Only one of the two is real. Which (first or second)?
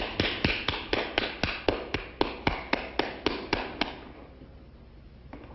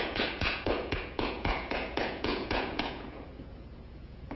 first